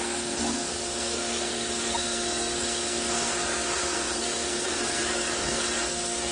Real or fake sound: fake